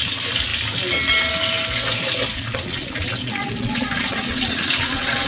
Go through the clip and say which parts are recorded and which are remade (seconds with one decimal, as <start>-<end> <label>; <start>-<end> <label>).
0.0-2.3 recorded; 2.3-5.3 remade